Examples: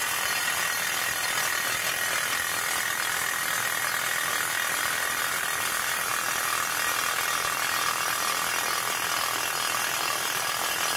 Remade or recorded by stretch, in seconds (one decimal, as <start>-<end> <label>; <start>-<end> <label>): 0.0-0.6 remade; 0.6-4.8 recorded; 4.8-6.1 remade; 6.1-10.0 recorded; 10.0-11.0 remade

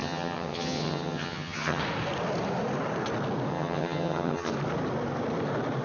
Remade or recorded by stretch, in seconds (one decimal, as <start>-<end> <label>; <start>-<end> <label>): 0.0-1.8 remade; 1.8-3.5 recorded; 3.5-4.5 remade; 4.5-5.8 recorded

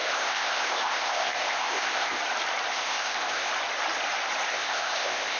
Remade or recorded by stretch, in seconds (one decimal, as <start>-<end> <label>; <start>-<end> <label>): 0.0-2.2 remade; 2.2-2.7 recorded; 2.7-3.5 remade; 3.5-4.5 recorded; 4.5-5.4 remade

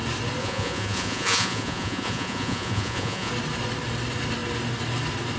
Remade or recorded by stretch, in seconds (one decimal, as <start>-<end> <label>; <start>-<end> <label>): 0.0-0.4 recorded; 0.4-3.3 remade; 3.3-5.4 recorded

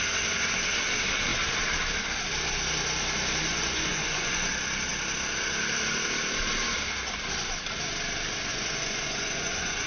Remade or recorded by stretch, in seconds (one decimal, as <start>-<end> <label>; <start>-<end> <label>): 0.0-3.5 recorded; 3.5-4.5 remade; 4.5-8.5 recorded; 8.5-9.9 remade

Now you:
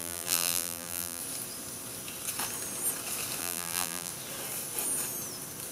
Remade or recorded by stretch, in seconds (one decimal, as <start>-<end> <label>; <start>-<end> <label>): 0.0-1.2 remade; 1.2-3.4 recorded; 3.4-4.1 remade; 4.1-5.7 recorded